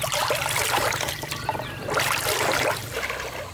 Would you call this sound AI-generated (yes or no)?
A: yes